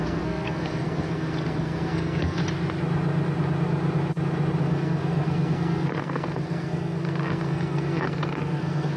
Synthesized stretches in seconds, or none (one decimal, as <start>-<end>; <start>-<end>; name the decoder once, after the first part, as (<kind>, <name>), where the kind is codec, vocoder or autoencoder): 0.0-2.4 (codec, SNAC); 4.6-9.0